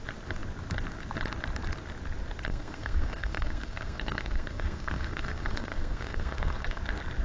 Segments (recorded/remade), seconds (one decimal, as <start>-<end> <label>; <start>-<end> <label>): 0.0-2.5 recorded; 2.5-6.8 remade; 6.8-7.2 recorded